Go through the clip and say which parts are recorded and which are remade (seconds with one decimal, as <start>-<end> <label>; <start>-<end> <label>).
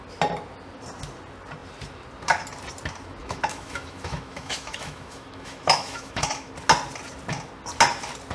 0.0-3.2 recorded; 3.2-6.5 remade; 6.5-8.3 recorded